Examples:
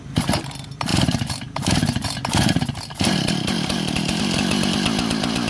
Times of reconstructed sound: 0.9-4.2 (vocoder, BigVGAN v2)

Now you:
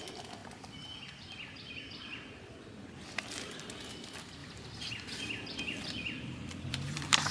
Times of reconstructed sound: 4.4-7.3 (vocoder, BigVGAN v2)

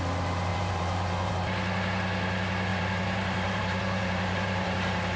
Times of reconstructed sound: 0.5-1.3 (vocoder, BigVGAN v2); 2.7-5.2

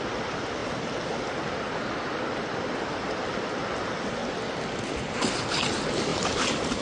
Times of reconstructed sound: 6.1-6.8 (vocoder, BigVGAN v2)

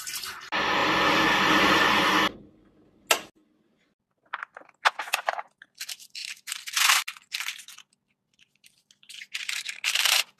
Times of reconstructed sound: 0.8-1.4 (vocoder, BigVGAN v2)

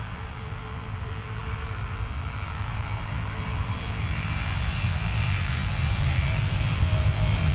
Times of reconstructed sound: 0.0-7.5 (vocoder, BigVGAN v2)

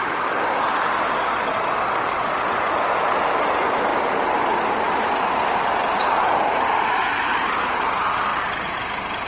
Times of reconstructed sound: 3.9-6.5 (vocoder, BigVGAN v2); 6.9-7.5; 8.3-8.8

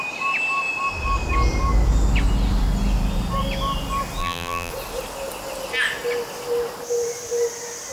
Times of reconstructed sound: 4.2-4.7 (vocoder, BigVGAN v2)